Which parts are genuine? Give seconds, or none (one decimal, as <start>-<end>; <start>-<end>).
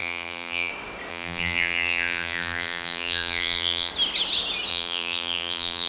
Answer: 0.7-1.1; 3.9-4.7